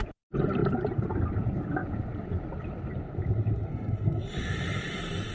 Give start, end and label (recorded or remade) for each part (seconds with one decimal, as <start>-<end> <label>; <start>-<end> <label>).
0.0-3.7 recorded; 3.7-4.2 remade; 4.2-5.3 recorded